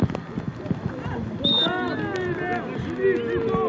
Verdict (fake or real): real